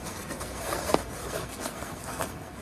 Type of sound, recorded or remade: remade